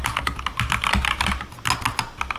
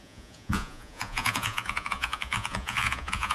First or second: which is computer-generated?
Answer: second